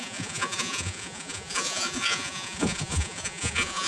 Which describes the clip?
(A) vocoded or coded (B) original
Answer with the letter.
A